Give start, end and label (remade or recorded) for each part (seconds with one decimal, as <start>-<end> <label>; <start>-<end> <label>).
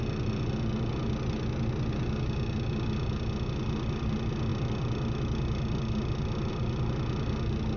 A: 0.0-7.8 recorded